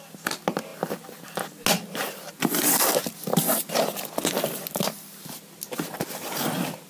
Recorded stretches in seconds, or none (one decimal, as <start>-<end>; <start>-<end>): 0.0-6.9